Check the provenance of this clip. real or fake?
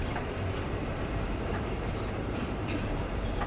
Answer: fake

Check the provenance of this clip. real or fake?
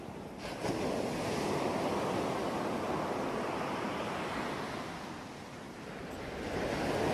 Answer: real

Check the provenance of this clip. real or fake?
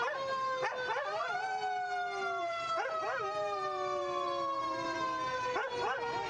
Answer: fake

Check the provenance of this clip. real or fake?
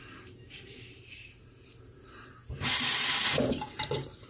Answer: fake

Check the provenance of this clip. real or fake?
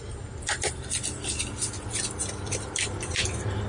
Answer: real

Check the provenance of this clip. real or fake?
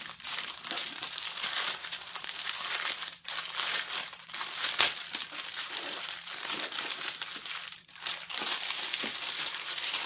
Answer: fake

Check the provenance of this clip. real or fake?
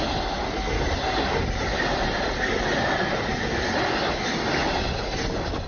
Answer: real